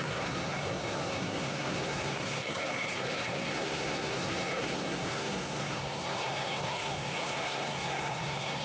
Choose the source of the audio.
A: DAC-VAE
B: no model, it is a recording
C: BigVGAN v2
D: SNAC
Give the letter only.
D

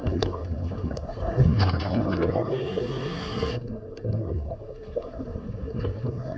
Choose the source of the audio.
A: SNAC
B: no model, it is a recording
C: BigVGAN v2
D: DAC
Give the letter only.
A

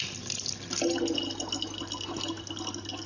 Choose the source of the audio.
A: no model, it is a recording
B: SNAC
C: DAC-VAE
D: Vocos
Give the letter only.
A